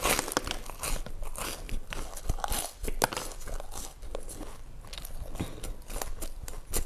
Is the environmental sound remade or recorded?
recorded